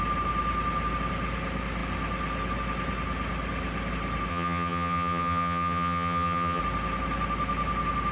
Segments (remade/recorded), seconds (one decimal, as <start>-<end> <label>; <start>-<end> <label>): 0.0-4.3 recorded; 4.3-6.6 remade; 6.6-8.1 recorded